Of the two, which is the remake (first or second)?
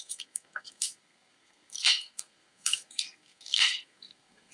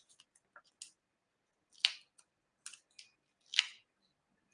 first